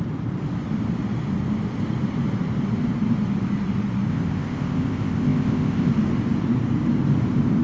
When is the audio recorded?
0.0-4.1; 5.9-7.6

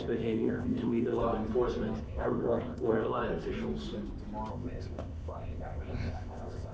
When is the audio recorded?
1.2-2.0; 3.2-4.5